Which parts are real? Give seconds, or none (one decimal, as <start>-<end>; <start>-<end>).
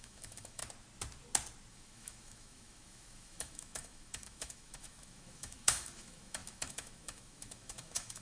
0.6-1.7